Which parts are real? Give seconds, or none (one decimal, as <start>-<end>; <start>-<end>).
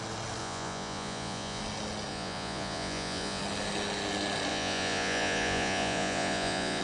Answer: 0.0-0.4; 1.6-2.1; 3.4-4.5